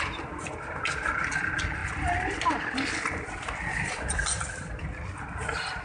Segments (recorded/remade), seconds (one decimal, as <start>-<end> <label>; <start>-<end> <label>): 0.0-5.8 recorded